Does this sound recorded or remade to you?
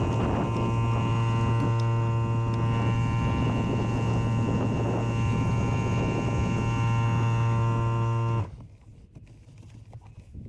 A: recorded